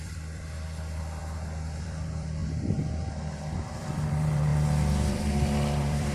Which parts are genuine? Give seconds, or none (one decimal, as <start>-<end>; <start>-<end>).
1.2-1.8; 2.4-3.5; 4.5-5.1